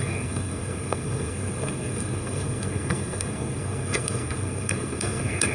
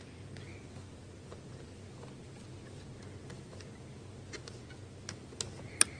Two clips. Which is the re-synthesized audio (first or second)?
first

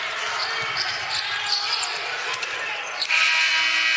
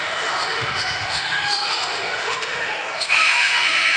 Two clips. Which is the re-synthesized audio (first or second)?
second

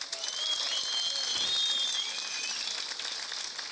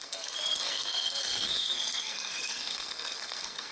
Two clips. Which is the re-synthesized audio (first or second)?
second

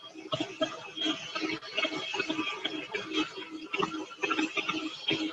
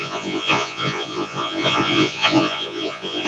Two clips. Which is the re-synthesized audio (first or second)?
second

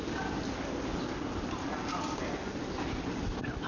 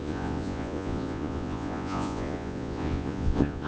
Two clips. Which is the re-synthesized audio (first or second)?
second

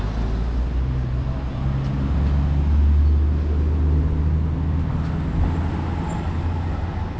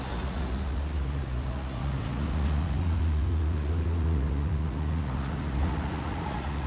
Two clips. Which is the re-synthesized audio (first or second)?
second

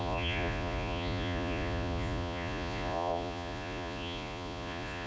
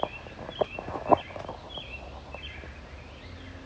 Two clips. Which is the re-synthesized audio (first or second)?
first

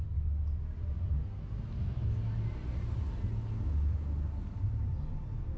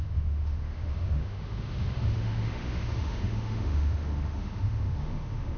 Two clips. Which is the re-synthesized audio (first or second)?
second